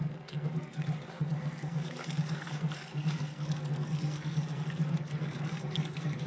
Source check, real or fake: fake